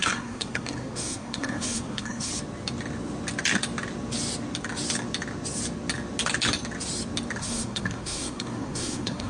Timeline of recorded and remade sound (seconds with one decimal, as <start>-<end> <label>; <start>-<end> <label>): 0.0-2.3 remade; 2.3-7.4 recorded; 7.4-9.3 remade